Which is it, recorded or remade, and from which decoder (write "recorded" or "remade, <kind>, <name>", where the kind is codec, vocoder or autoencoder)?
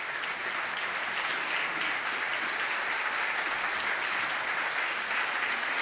recorded